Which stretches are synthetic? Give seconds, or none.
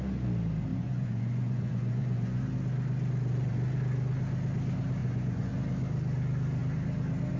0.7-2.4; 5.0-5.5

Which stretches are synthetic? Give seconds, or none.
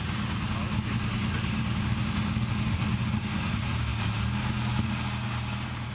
none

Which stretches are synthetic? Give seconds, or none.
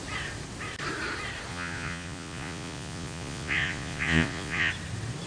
1.5-4.7